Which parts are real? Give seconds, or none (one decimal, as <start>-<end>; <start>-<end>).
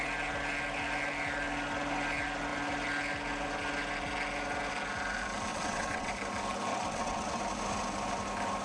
0.0-5.5; 6.1-6.7; 7.4-8.6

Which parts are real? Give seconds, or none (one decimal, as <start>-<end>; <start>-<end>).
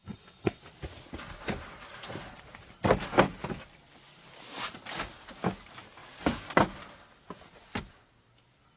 0.6-8.8